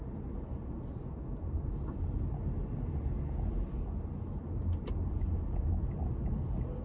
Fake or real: real